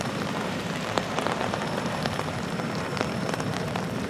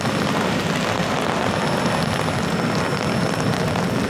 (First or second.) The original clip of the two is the second